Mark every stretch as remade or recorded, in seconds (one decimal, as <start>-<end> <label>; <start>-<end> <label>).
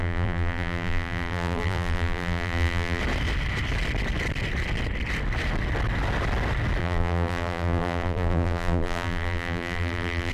0.0-3.0 remade; 3.0-6.8 recorded; 6.8-10.3 remade